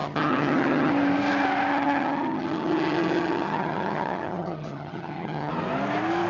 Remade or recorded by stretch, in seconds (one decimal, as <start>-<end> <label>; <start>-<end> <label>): 0.0-0.9 remade; 0.9-1.7 recorded; 1.7-5.5 remade; 5.5-6.3 recorded